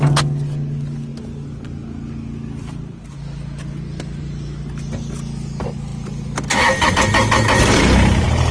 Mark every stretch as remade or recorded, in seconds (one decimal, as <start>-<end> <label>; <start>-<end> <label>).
0.0-8.5 recorded